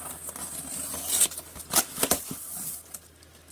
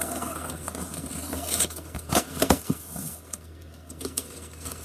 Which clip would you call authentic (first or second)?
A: first